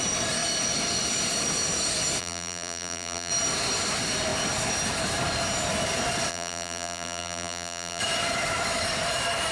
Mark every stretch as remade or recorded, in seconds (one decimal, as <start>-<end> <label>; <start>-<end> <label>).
0.0-2.2 recorded; 2.2-3.3 remade; 3.3-6.3 recorded; 6.3-8.0 remade; 8.0-9.5 recorded

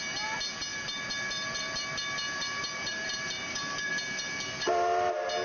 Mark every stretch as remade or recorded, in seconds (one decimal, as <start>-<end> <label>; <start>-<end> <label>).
0.0-0.7 recorded; 0.7-3.9 remade; 3.9-5.4 recorded

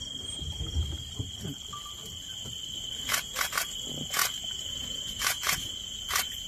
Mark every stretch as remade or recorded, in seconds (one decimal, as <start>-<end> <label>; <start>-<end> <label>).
0.0-4.2 recorded; 4.2-6.5 remade

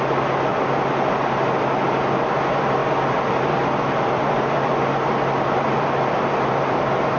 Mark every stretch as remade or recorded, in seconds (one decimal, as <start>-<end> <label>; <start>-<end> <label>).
0.0-2.8 recorded; 2.8-7.2 remade

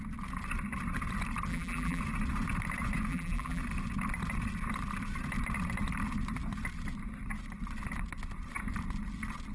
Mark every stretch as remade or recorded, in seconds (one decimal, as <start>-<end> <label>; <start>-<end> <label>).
0.0-1.5 recorded; 1.5-2.0 remade; 2.0-3.1 recorded; 3.1-3.6 remade; 3.6-9.5 recorded